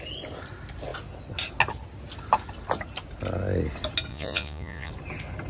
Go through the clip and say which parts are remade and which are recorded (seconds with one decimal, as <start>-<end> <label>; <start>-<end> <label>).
0.0-4.1 recorded; 4.1-4.9 remade; 4.9-5.5 recorded